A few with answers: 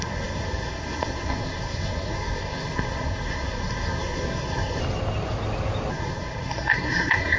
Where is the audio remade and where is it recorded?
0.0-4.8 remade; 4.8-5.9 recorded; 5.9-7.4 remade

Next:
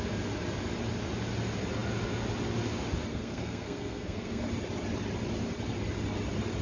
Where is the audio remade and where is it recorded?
0.0-3.1 recorded; 3.1-4.4 remade; 4.4-6.6 recorded

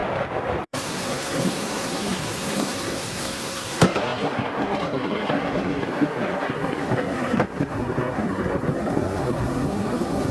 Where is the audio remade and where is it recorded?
0.0-0.6 recorded; 0.6-10.3 remade